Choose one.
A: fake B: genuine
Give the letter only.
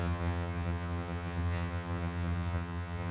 A